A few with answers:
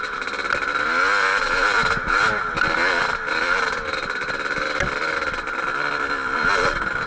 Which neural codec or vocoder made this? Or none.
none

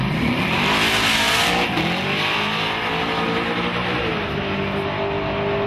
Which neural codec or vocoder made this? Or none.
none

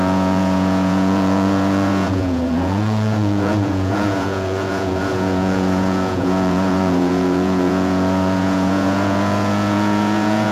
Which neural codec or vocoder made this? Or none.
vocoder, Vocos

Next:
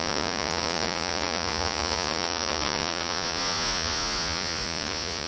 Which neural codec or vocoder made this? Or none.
vocoder, Vocos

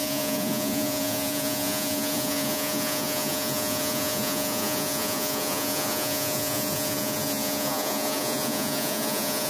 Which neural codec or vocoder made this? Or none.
vocoder, Vocos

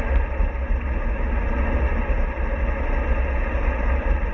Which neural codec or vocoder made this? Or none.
none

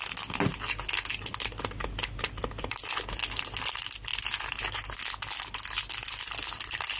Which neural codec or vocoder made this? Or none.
none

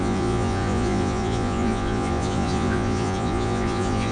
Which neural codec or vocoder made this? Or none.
vocoder, Vocos